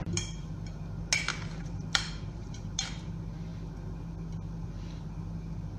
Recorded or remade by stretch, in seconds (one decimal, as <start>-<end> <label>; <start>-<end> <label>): 0.0-1.3 recorded; 1.3-3.1 remade; 3.1-5.8 recorded